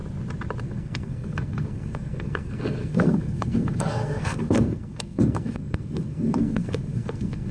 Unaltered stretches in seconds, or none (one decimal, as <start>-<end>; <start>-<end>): 0.0-0.6